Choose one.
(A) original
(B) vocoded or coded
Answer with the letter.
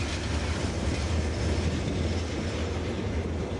A